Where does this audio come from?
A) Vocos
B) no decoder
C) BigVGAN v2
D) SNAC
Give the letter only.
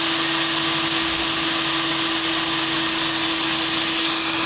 B